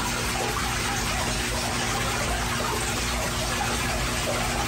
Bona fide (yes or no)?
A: yes